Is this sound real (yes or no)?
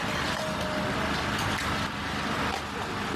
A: yes